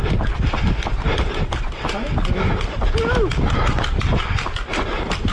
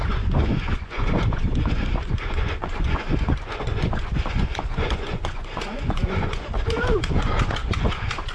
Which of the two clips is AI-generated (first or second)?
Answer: second